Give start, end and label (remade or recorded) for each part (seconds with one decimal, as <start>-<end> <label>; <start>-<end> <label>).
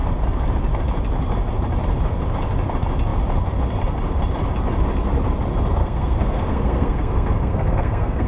0.0-5.8 recorded; 5.8-8.3 remade